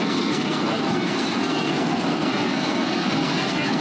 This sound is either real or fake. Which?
fake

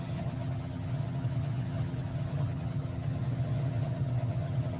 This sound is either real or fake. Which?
fake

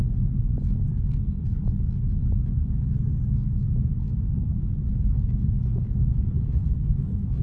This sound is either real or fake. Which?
real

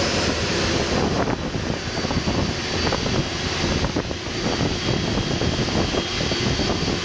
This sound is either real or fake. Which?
real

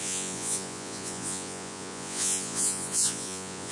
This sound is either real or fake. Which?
fake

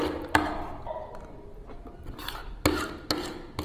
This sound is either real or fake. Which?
real